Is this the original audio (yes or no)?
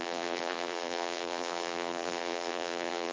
no